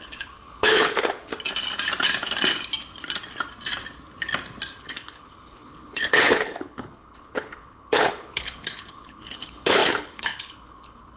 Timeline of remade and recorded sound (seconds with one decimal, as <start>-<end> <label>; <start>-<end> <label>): 0.0-1.3 remade; 1.3-4.8 recorded; 4.8-11.2 remade